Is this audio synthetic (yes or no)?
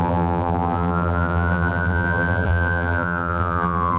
yes